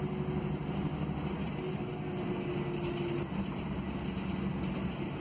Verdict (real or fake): real